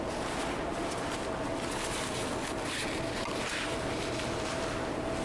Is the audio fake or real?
real